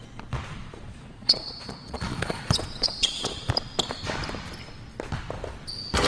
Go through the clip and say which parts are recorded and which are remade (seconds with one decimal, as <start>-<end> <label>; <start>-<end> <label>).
0.0-0.5 recorded; 0.5-3.5 remade; 3.5-6.1 recorded